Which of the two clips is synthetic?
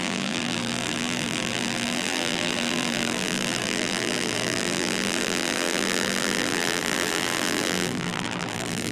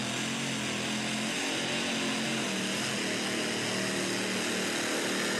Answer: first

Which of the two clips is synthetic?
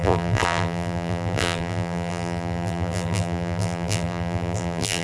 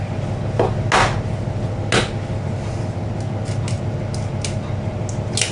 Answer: first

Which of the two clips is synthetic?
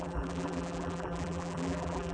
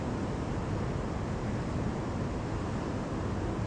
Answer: first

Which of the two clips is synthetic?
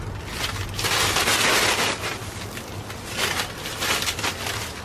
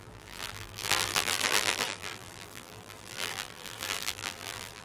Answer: second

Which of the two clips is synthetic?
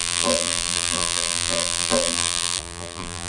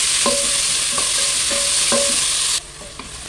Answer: first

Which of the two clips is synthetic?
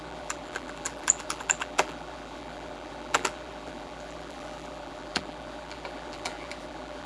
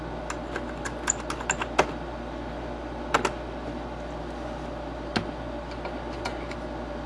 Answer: first